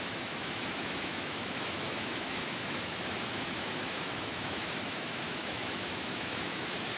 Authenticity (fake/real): fake